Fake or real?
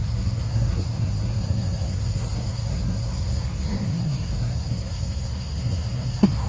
fake